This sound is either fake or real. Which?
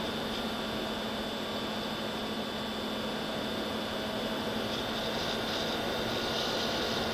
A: real